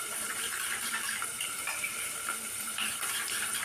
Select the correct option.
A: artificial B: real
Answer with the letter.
A